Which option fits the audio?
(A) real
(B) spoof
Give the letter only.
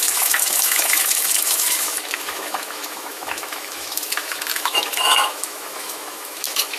B